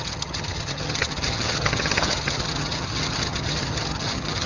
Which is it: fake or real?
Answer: fake